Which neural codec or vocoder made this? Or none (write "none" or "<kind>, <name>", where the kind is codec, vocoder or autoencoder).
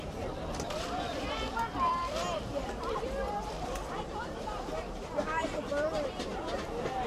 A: vocoder, BigVGAN v2